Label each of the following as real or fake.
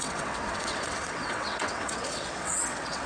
fake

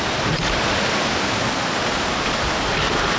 real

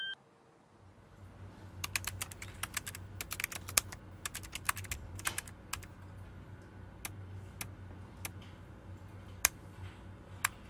real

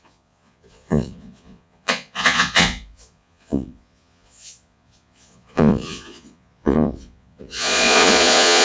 fake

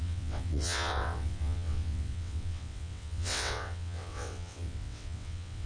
fake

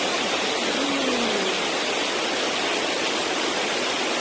real